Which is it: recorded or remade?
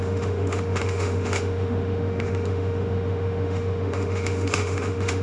remade